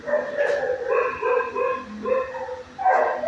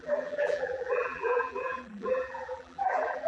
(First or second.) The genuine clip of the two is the first